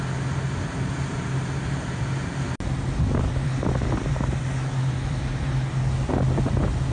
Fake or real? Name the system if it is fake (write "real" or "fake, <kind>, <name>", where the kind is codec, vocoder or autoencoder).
real